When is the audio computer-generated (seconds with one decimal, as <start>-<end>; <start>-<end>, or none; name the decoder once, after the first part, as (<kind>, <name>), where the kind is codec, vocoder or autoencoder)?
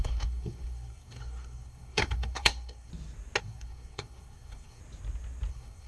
0.0-2.9 (codec, SNAC); 3.4-4.8; 5.5-5.9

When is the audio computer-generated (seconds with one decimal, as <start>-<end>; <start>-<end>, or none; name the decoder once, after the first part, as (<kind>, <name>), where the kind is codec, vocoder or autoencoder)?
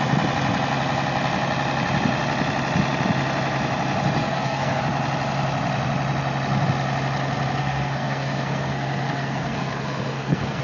4.2-4.8 (codec, SNAC); 7.6-10.6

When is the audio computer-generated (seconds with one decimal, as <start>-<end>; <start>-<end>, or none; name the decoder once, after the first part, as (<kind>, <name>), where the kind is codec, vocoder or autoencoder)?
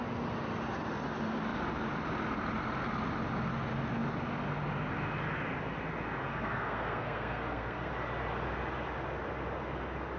6.3-7.9 (codec, SNAC)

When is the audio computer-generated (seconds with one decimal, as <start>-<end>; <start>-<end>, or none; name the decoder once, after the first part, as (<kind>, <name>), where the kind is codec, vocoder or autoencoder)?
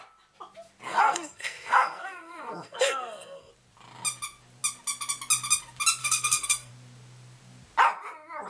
0.9-3.5 (codec, SNAC); 6.0-6.7